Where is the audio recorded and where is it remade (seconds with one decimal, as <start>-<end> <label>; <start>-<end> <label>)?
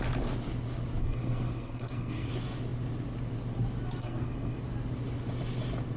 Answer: 0.0-1.0 recorded; 1.0-2.3 remade; 2.3-4.0 recorded; 4.0-4.6 remade; 4.6-6.0 recorded